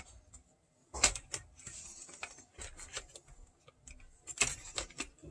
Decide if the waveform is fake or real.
real